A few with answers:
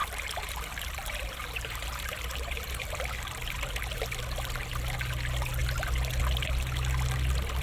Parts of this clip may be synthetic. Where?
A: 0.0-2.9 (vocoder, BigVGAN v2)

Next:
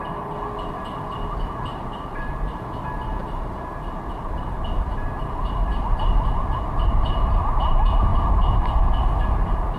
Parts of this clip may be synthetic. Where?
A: 1.7-2.5 (vocoder, BigVGAN v2)

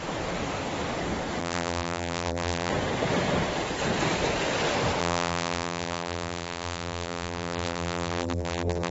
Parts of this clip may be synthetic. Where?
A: 1.4-2.7 (vocoder, BigVGAN v2); 5.0-8.9